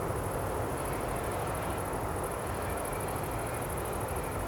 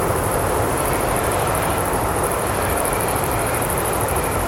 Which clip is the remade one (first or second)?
second